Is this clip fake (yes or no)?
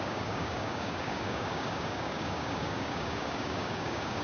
yes